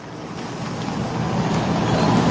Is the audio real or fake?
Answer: real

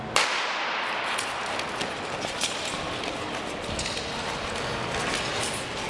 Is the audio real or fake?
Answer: real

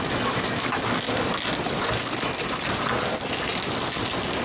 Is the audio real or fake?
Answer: real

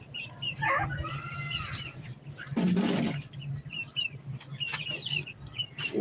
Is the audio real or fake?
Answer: real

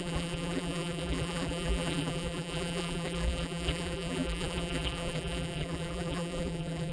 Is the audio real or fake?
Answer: fake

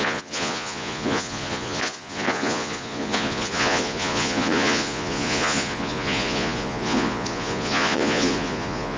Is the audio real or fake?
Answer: fake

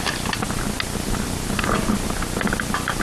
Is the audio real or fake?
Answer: real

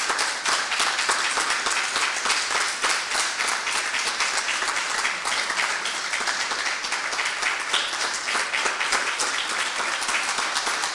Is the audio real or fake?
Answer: fake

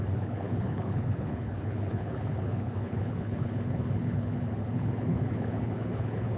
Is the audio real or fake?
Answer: fake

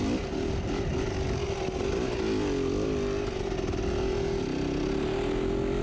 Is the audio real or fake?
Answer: real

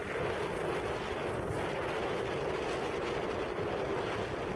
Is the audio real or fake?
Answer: real